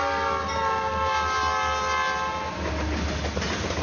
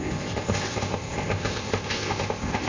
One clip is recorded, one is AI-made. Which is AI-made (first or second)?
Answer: second